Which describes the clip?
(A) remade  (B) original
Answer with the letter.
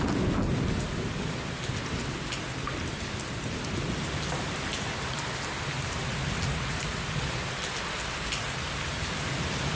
B